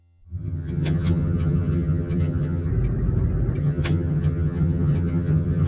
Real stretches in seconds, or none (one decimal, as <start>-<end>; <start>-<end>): 2.7-3.6